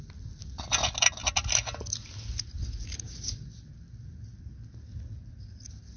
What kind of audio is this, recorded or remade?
recorded